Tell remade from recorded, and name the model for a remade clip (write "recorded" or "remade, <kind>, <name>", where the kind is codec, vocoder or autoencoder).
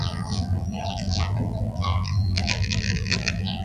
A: remade, vocoder, BigVGAN v2